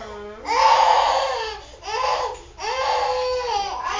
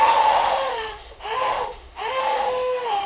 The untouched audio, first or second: first